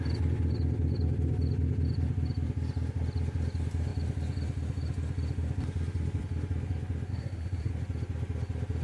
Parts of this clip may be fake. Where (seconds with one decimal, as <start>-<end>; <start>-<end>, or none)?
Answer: 7.1-7.7